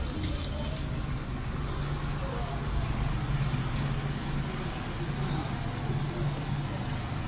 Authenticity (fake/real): real